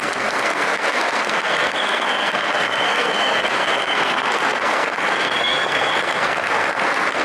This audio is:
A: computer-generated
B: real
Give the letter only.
A